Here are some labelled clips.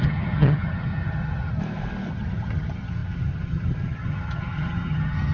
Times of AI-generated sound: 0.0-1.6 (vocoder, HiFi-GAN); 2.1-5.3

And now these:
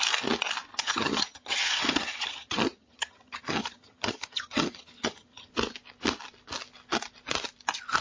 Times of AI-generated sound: 0.7-5.5 (vocoder, HiFi-GAN)

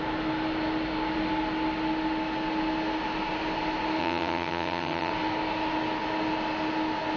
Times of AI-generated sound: 4.0-5.1 (vocoder, HiFi-GAN)

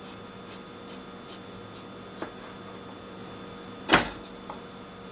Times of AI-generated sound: none